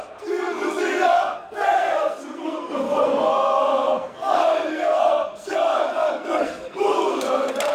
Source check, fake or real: fake